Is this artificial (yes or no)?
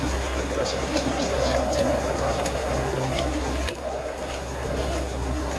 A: yes